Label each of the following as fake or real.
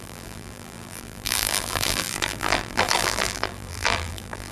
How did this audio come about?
fake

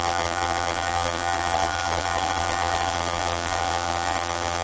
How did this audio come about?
fake